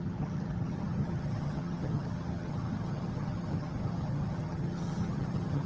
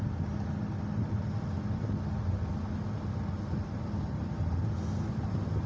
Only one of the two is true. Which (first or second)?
second